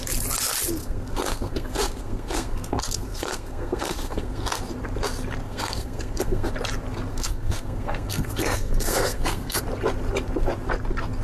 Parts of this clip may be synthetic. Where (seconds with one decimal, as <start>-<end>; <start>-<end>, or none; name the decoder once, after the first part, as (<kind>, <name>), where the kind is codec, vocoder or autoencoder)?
0.8-4.6 (codec, SNAC); 5.4-6.5; 7.1-9.6

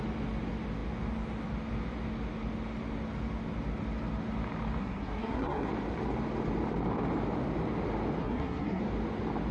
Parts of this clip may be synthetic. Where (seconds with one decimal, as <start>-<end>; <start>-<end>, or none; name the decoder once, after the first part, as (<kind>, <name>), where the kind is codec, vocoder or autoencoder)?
4.8-5.7 (codec, SNAC); 8.2-8.8

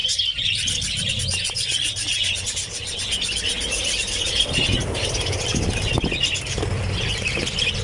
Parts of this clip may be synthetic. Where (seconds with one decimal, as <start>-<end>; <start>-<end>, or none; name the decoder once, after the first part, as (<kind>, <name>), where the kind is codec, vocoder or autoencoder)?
none

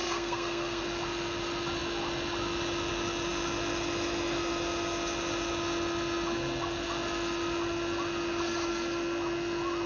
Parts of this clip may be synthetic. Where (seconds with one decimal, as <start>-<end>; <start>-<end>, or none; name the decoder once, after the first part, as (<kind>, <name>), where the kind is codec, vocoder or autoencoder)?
0.0-0.8 (codec, SNAC)

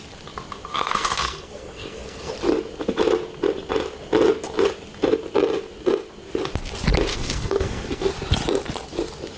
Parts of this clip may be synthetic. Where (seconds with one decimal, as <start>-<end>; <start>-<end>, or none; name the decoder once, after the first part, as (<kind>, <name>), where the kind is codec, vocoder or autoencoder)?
0.7-2.3 (codec, SNAC); 7.1-8.1